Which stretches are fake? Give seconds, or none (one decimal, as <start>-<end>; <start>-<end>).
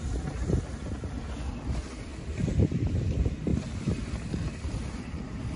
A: 0.0-0.7; 1.5-5.6